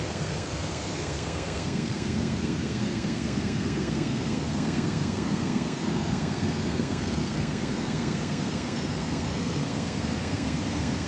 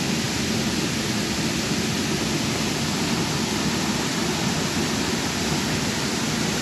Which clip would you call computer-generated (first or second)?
first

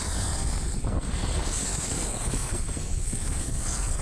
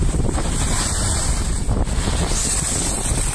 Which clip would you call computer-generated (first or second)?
first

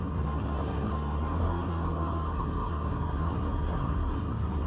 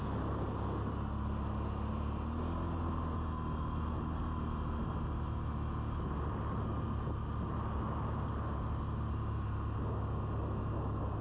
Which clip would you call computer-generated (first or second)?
first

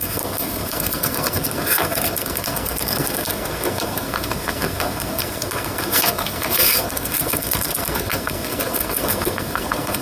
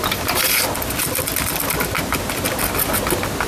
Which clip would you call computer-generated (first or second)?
first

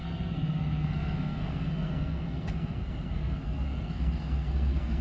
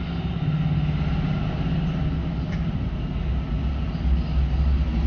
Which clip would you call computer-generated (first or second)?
first